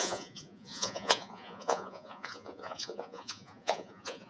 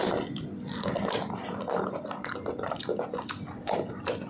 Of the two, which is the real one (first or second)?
second